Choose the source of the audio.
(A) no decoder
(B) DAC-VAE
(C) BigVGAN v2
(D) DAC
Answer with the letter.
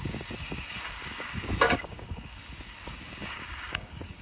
D